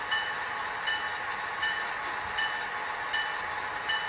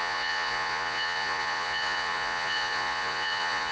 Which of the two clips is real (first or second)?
first